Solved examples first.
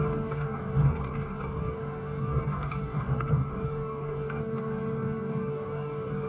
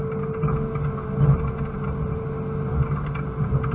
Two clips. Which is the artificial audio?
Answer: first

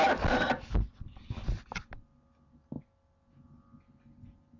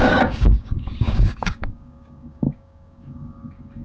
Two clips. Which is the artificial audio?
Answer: second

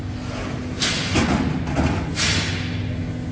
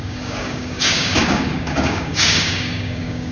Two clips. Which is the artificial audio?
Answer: second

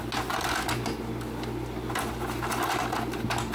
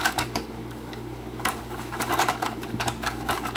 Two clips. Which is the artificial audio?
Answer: second